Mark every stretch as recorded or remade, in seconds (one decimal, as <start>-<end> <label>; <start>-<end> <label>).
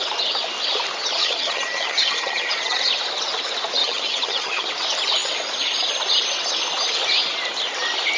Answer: 0.0-1.2 recorded; 1.2-2.9 remade; 2.9-3.8 recorded; 3.8-4.7 remade; 4.7-8.2 recorded